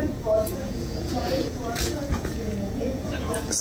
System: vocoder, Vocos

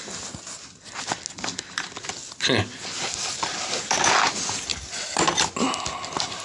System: none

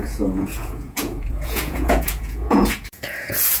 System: vocoder, Vocos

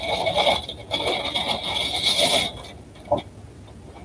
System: none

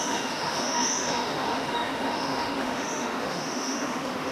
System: autoencoder, DAC-VAE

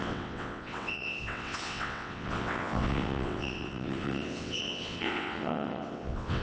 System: vocoder, WaveNeXt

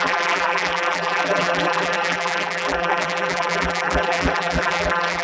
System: vocoder, BigVGAN v2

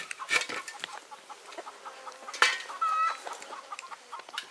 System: none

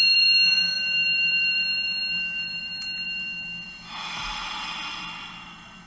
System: vocoder, BigVGAN v2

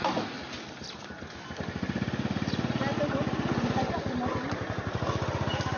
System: none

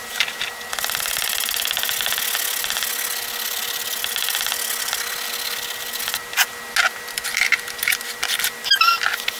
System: none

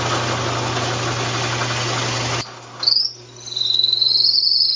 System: none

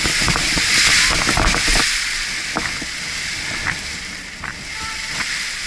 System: none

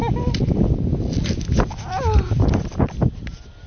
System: none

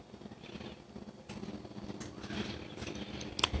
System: none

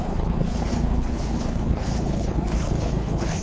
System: codec, HILCodec